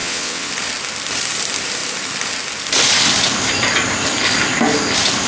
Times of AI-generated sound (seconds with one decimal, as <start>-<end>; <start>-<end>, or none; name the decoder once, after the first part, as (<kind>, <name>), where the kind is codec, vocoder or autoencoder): 0.0-0.5 (vocoder, WaveNeXt)